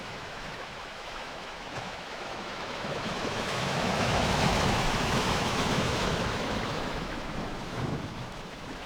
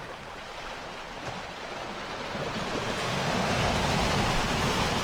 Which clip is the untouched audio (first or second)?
second